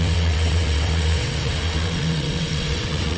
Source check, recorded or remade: remade